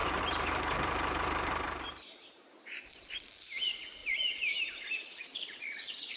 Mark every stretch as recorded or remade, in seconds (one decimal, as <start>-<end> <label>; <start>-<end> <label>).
0.0-3.0 remade; 3.0-4.0 recorded; 4.0-6.2 remade